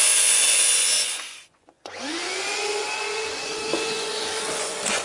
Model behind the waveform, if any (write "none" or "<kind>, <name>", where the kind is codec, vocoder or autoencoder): vocoder, Vocos